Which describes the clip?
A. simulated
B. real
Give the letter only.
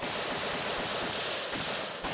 B